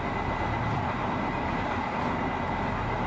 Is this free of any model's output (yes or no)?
yes